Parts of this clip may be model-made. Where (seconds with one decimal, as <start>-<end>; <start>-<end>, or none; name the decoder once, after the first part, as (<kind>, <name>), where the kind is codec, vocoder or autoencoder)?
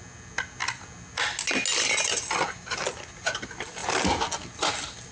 none